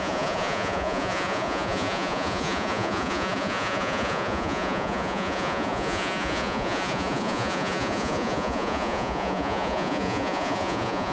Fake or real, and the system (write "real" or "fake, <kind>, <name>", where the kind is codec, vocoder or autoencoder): fake, vocoder, Vocos